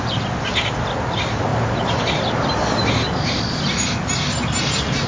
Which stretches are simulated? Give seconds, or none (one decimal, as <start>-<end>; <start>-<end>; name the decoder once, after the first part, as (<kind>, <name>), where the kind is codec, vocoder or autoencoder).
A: none